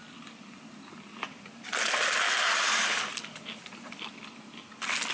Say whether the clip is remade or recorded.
recorded